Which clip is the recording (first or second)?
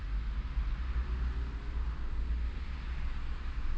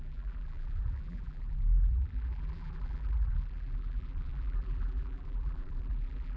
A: first